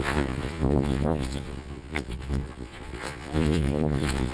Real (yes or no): no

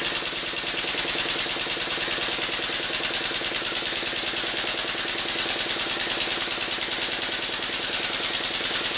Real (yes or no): no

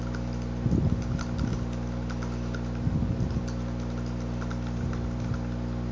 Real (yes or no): yes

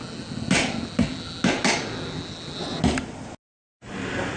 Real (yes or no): yes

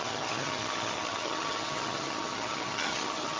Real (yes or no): no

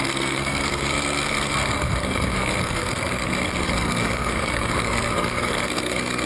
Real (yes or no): no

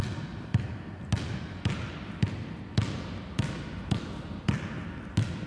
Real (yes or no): yes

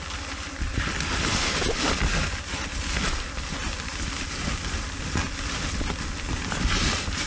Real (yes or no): yes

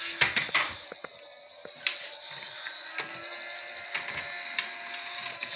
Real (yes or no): yes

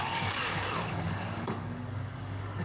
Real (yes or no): no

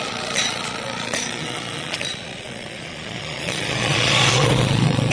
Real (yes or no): no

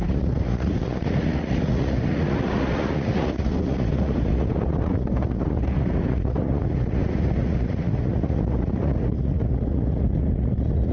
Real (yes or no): no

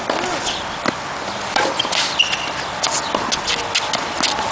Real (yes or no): yes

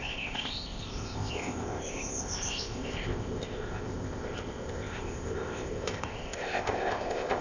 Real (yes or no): no